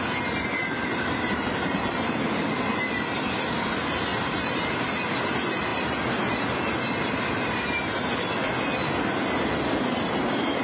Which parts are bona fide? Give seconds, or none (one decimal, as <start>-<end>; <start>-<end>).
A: 0.0-0.6; 1.9-4.1; 4.6-10.6